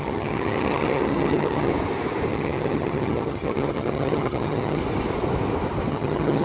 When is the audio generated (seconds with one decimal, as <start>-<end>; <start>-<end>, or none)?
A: 0.0-1.7; 2.3-4.8; 5.9-6.4